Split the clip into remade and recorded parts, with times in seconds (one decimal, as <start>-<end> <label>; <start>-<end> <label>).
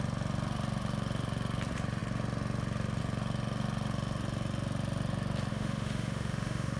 0.0-5.5 recorded; 5.5-6.8 remade